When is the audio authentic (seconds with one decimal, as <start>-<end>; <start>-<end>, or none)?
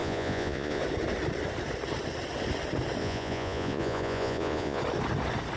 0.8-3.0; 4.8-5.6